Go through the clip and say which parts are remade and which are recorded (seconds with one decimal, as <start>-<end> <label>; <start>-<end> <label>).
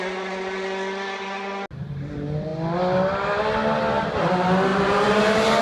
0.0-4.7 recorded; 4.7-5.6 remade